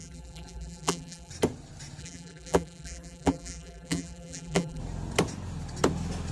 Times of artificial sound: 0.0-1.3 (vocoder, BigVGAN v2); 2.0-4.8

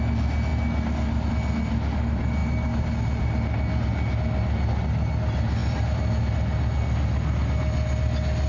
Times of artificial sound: 2.4-2.9 (vocoder, BigVGAN v2); 5.6-6.2